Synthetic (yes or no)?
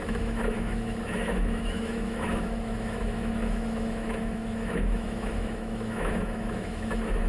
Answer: yes